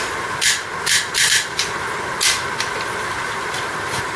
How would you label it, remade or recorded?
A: recorded